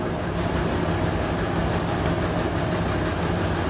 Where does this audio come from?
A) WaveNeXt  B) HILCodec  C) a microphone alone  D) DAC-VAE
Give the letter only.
C